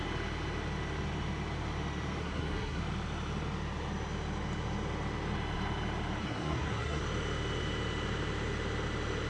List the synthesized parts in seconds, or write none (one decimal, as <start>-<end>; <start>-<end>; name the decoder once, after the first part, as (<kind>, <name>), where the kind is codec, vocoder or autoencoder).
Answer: 2.2-2.8 (codec, SNAC); 6.2-7.0